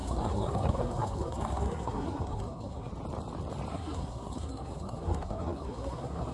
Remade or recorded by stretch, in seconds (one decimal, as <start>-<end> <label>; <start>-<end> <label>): 0.0-2.9 remade; 2.9-3.7 recorded; 3.7-6.3 remade